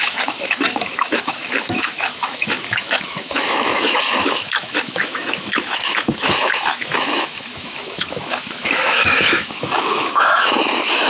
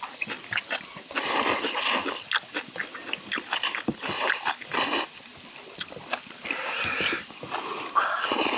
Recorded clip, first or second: second